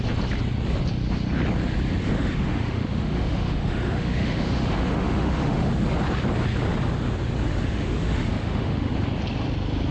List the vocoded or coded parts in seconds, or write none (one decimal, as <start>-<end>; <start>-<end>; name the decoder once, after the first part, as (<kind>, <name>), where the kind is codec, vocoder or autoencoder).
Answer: 2.0-5.7 (autoencoder, DAC-VAE); 7.5-8.9